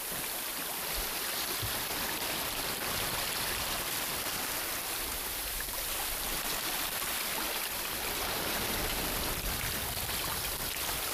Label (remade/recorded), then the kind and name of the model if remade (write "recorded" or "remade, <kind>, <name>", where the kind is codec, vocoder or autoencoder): recorded